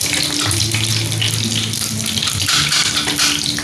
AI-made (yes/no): no